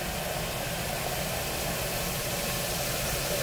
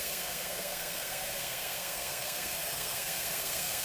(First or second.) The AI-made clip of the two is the second